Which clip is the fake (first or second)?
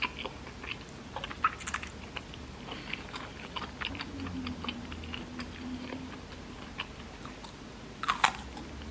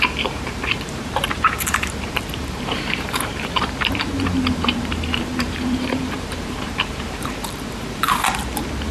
second